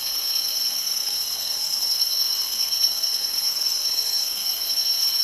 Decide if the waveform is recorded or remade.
remade